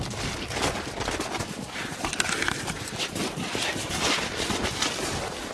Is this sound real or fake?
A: real